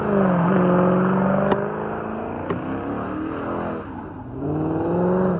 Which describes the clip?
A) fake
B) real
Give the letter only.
B